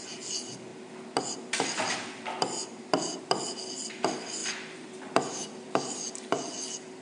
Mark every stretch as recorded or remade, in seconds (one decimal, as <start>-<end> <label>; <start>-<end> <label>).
0.0-7.0 recorded